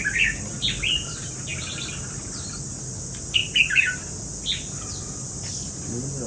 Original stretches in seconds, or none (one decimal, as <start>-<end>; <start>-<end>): 0.0-6.3